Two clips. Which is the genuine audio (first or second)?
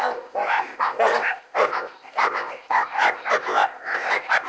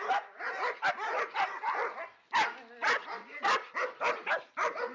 second